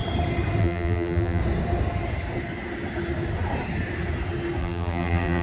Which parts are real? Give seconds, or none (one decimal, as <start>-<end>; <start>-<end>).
0.0-0.6; 1.4-4.6